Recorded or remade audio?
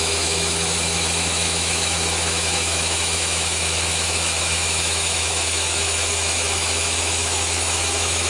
remade